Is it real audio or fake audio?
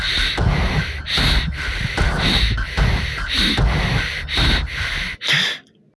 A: real